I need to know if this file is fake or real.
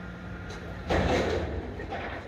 fake